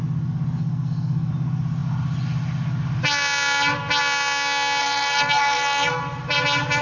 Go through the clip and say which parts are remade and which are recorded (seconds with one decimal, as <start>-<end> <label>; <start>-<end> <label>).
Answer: 0.0-0.6 recorded; 0.6-1.3 remade; 1.3-4.8 recorded; 4.8-6.0 remade; 6.0-6.8 recorded